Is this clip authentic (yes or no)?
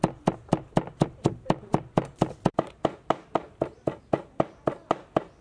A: yes